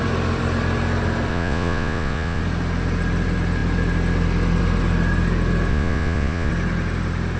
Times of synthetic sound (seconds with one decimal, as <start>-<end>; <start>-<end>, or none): 1.3-2.4; 5.7-6.5